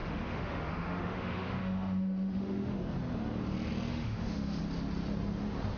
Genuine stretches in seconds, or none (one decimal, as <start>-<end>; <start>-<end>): 2.8-3.9; 4.6-5.8